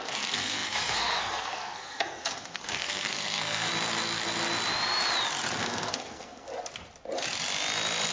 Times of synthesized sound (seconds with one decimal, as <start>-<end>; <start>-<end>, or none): 0.0-3.7; 5.6-6.5